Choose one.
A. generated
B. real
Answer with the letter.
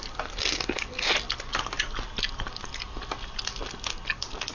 B